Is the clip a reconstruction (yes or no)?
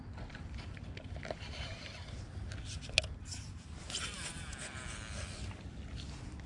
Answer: no